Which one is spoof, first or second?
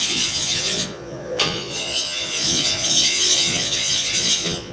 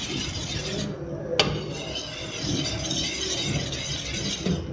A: first